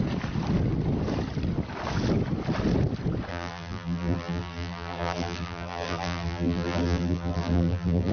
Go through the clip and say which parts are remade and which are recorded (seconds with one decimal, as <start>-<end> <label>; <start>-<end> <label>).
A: 0.0-3.3 recorded; 3.3-8.1 remade